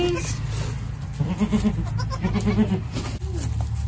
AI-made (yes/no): no